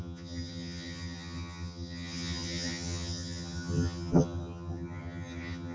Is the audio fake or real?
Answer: fake